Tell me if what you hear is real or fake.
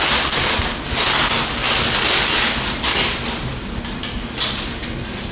real